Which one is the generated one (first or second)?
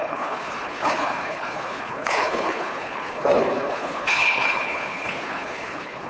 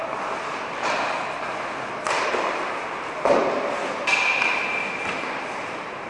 first